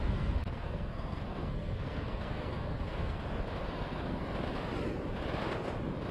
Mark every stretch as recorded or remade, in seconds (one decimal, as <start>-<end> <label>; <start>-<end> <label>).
0.0-3.2 remade; 3.2-3.6 recorded; 3.6-4.2 remade; 4.2-6.1 recorded